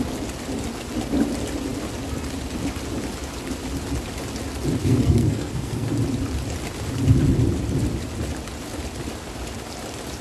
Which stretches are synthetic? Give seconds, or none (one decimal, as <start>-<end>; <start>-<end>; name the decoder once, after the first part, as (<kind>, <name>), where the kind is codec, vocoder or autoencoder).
4.8-5.9 (codec, SNAC)